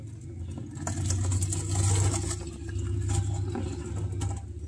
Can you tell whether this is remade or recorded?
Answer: recorded